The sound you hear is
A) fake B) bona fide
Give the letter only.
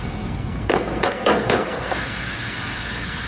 A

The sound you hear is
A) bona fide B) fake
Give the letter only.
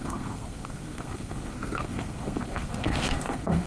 B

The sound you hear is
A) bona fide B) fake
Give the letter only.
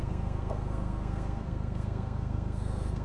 B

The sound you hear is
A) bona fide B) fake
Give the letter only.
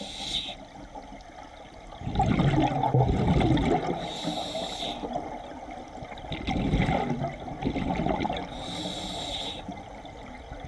A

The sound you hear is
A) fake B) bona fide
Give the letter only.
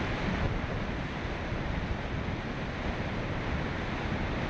B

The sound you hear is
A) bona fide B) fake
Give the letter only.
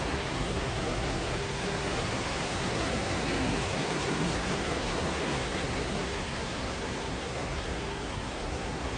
B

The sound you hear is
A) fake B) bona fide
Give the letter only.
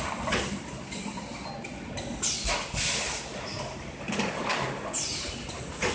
B